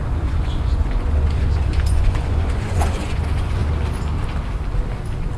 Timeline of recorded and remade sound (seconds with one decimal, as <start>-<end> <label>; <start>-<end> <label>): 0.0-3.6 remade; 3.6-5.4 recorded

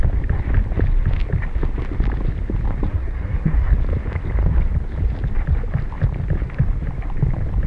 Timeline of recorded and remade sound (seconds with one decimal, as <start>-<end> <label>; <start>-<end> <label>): 0.0-2.9 recorded; 2.9-3.7 remade; 3.7-7.7 recorded

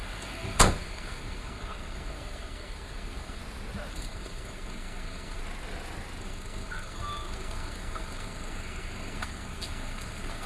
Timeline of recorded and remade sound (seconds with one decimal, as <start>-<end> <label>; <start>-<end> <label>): 0.0-3.4 remade; 3.4-3.9 recorded; 3.9-5.4 remade; 5.4-6.2 recorded; 6.2-10.5 remade